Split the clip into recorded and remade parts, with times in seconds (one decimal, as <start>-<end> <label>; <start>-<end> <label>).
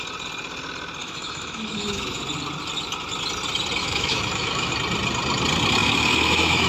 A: 0.0-1.0 recorded; 1.0-2.2 remade; 2.2-3.8 recorded; 3.8-4.7 remade; 4.7-5.8 recorded; 5.8-6.7 remade